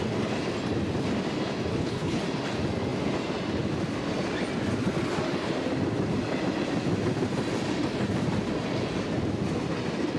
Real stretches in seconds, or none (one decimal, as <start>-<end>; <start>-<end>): 0.0-1.7; 2.2-10.2